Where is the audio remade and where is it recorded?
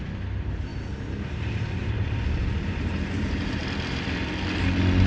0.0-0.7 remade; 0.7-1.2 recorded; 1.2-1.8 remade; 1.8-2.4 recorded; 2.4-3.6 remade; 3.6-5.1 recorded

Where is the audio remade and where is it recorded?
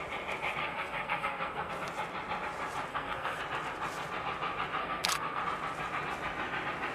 0.0-0.6 recorded; 0.6-1.7 remade; 1.7-2.9 recorded; 2.9-3.4 remade; 3.4-4.8 recorded; 4.8-5.4 remade; 5.4-6.9 recorded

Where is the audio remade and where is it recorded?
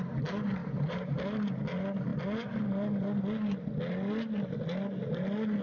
0.0-0.6 recorded; 0.6-1.5 remade; 1.5-5.6 recorded